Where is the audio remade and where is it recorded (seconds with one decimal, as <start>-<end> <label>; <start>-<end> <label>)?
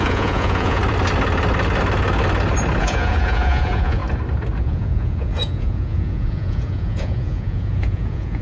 0.0-0.8 remade; 0.8-2.8 recorded; 2.8-4.0 remade; 4.0-4.6 recorded; 4.6-8.4 remade